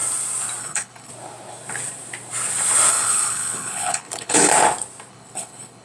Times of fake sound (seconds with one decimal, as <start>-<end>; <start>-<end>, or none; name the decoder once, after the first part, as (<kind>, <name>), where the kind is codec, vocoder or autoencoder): 0.6-1.1 (codec, HILCodec); 2.9-4.5; 5.1-5.8